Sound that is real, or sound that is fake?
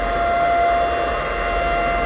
real